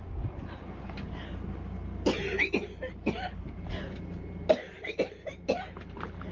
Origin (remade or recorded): recorded